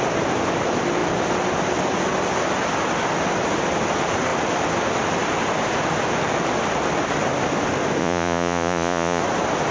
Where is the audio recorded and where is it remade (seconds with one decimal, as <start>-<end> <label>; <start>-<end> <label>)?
0.0-8.0 recorded; 8.0-9.2 remade; 9.2-9.7 recorded